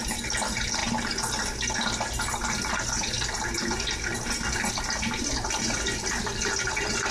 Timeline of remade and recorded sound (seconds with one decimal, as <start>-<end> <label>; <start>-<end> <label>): 0.0-7.1 recorded